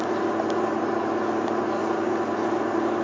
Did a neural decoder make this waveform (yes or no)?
no